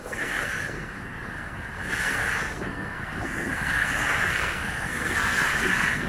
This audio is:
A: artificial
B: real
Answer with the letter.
A